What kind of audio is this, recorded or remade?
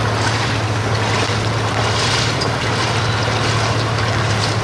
recorded